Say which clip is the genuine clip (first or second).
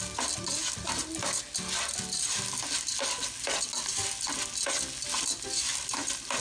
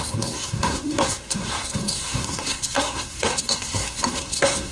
first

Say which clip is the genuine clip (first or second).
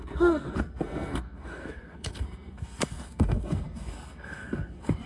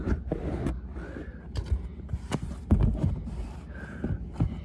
second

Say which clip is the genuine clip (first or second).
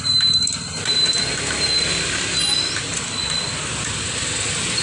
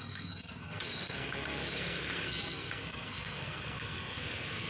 first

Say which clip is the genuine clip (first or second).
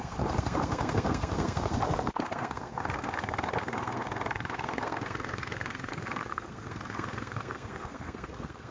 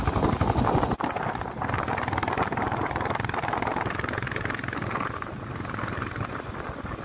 second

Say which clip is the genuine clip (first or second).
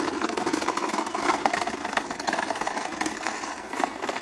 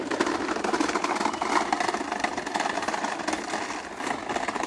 second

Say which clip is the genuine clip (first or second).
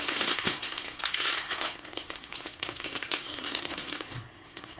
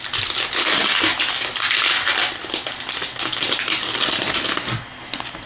second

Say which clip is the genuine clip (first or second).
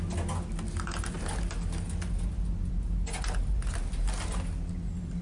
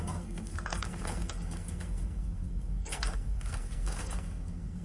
first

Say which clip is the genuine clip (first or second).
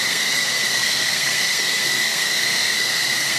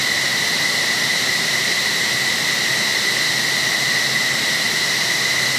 second